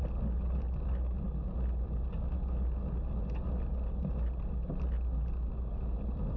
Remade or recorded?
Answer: recorded